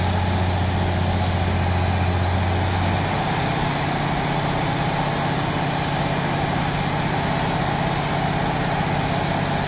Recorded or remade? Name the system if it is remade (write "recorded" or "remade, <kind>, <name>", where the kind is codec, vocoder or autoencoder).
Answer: recorded